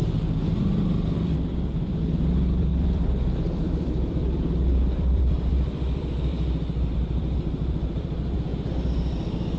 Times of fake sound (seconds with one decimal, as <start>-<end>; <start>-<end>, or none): 0.0-8.5

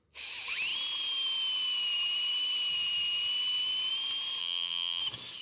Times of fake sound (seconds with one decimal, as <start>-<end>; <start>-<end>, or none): 4.4-5.0

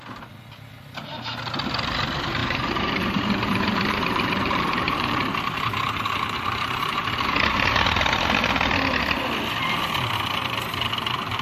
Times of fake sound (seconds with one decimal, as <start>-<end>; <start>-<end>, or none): 2.4-7.1

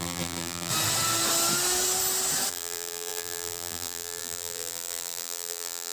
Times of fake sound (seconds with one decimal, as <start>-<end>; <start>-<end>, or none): 0.0-0.7; 2.5-5.9

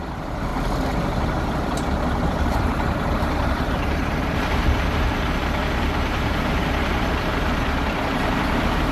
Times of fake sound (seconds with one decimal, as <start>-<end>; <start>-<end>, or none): 0.0-0.5; 2.3-8.9

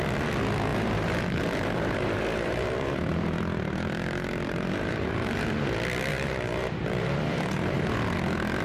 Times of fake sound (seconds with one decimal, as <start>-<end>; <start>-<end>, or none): 0.7-5.5; 6.1-7.9

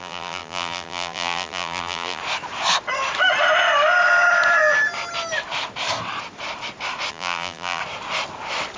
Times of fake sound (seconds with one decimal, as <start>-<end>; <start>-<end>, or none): 0.0-2.2; 7.1-7.8